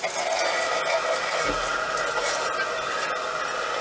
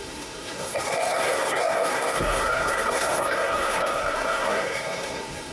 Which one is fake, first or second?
second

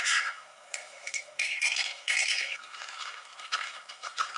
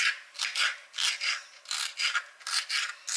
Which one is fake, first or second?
first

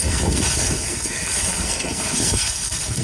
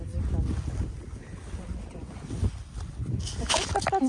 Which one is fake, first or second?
first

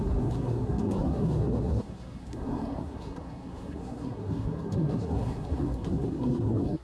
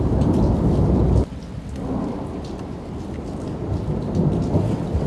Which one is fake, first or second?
first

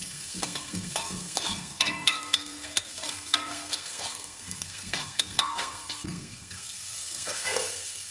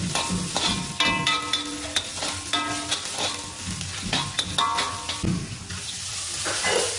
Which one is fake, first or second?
first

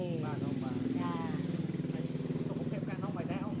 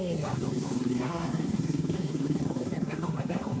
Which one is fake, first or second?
second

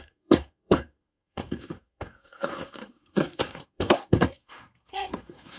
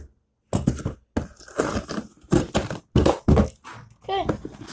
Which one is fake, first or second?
first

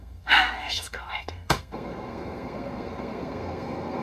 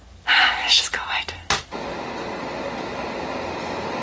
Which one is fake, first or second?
first